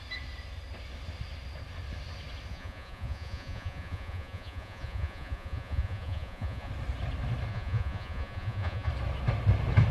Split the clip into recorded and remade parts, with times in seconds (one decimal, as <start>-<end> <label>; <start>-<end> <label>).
0.0-2.5 recorded; 2.5-6.7 remade; 6.7-7.5 recorded; 7.5-8.9 remade; 8.9-9.9 recorded